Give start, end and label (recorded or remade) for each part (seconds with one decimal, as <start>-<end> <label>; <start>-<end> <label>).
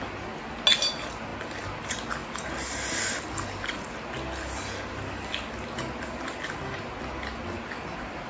0.0-8.3 recorded